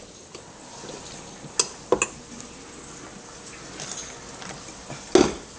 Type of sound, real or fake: real